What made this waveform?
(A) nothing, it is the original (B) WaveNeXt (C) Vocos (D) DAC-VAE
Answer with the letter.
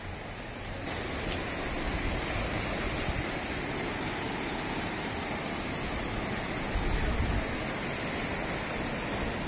A